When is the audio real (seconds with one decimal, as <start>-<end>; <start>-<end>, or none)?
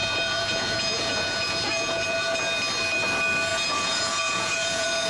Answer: 2.4-3.5